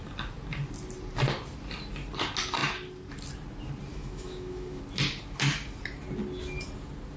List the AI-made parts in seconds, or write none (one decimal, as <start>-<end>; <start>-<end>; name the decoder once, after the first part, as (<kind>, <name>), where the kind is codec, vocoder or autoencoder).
3.9-4.8 (autoencoder, DAC-VAE)